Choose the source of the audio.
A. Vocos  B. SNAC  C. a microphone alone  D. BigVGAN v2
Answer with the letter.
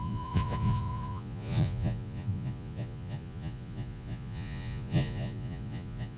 A